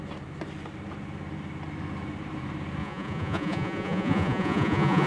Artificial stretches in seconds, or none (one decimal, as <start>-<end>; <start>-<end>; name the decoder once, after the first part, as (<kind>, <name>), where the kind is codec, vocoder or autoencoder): 2.8-5.1 (vocoder, Vocos)